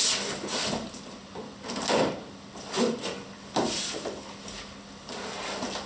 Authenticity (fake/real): real